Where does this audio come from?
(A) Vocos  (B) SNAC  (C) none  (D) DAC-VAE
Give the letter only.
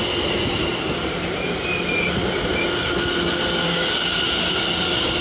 C